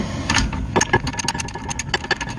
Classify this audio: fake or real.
real